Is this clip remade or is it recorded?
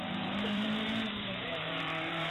remade